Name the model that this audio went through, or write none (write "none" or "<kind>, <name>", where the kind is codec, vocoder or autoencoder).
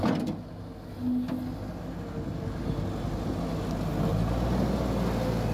none